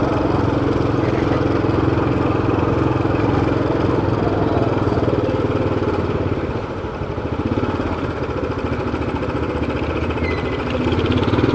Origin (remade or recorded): recorded